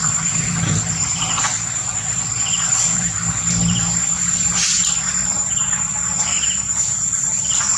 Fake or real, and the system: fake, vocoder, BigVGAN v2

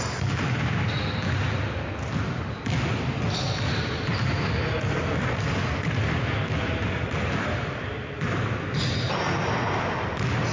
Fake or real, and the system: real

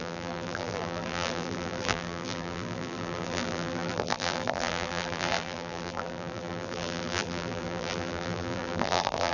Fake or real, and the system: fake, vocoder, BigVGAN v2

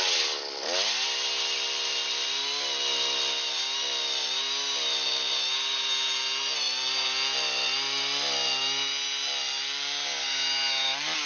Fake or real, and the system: real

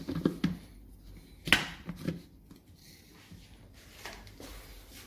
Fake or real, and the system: real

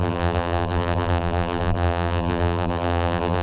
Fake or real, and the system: fake, vocoder, BigVGAN v2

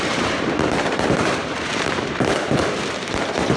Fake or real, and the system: fake, vocoder, BigVGAN v2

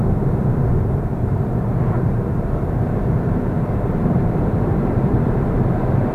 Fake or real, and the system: fake, vocoder, BigVGAN v2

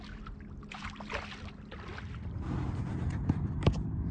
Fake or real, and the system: fake, vocoder, BigVGAN v2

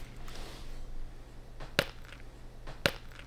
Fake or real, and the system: real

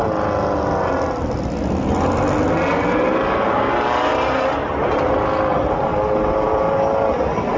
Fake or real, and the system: real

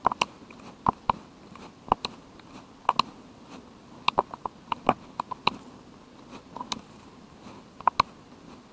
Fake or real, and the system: real